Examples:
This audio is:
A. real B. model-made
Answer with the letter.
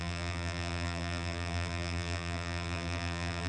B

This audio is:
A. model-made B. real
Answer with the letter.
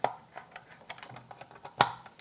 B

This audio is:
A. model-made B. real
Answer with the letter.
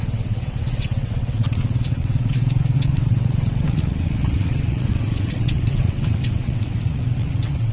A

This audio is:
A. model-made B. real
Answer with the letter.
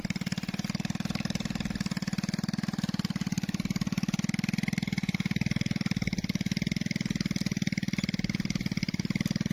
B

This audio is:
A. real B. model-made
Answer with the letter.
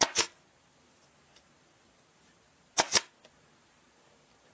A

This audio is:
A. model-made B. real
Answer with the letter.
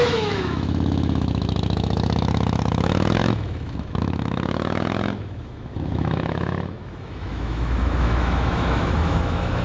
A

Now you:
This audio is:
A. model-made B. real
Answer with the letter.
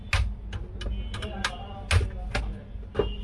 B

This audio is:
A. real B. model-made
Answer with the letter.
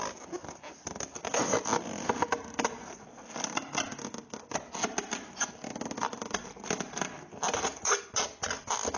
A